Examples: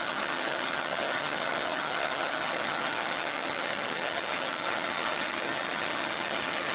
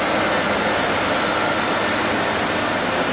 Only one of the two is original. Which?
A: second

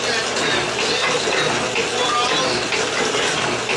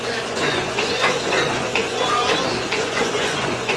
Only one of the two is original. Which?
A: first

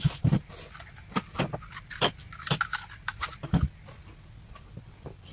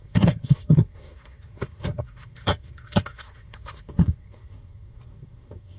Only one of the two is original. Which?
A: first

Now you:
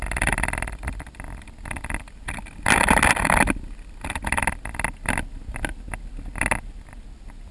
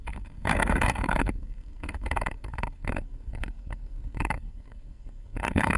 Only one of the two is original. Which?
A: first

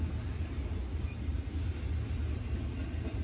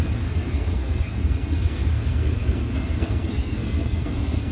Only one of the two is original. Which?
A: first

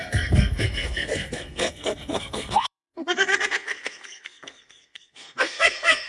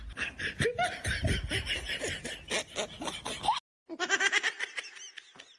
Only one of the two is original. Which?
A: second